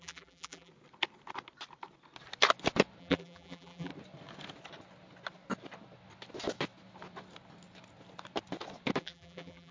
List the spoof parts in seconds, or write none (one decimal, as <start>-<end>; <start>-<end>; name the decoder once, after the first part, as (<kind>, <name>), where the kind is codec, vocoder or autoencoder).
0.0-0.7 (vocoder, BigVGAN v2); 3.0-3.9; 9.0-9.7